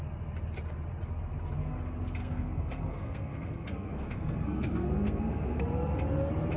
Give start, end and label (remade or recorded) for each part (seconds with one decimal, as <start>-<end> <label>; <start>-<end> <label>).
0.0-2.2 recorded; 2.2-5.6 remade; 5.6-6.6 recorded